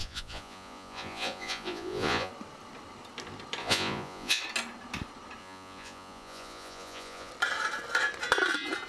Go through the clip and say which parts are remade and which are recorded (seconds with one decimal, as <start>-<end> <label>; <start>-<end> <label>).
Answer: 0.0-2.3 remade; 2.3-3.6 recorded; 3.6-4.4 remade; 4.4-5.4 recorded; 5.4-7.3 remade; 7.3-8.9 recorded